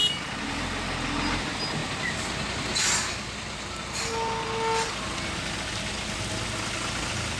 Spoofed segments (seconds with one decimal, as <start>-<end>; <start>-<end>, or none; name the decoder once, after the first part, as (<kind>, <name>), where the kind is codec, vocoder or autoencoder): none